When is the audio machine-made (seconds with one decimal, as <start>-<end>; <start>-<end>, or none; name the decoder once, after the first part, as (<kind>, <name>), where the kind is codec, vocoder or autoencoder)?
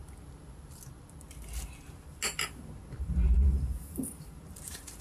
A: 3.0-5.0 (vocoder, BigVGAN v2)